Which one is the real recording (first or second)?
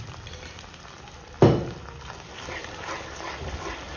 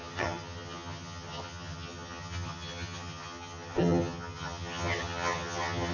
first